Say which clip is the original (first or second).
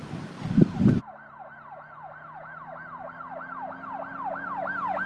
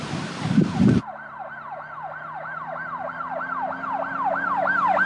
first